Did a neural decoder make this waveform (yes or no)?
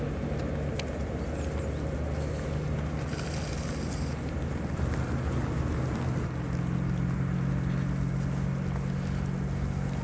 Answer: no